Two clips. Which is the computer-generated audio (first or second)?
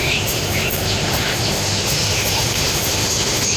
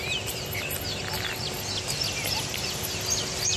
first